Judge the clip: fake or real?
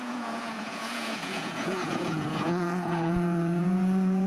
fake